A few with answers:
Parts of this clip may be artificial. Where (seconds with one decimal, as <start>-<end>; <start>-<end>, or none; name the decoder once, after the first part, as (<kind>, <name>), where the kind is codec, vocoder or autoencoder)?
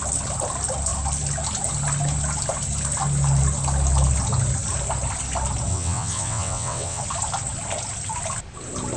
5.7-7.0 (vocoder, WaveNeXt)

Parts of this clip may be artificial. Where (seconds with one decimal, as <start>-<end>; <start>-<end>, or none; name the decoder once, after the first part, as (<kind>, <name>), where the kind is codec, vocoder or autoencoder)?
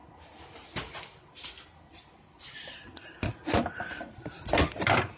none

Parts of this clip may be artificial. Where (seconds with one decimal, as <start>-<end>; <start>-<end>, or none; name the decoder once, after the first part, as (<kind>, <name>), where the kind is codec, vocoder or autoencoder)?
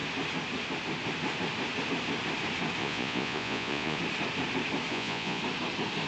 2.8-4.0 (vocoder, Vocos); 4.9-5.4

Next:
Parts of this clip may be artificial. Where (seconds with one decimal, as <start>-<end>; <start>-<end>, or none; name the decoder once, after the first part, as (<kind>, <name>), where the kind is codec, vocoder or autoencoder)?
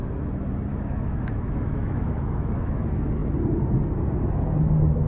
0.7-2.8 (autoencoder, DAC-VAE)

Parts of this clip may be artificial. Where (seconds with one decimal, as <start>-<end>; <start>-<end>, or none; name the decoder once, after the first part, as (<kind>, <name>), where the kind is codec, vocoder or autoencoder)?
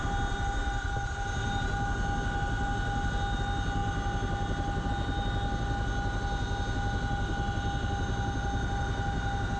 none